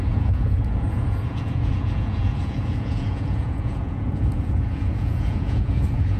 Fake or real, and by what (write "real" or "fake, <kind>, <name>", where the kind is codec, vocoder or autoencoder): fake, vocoder, Vocos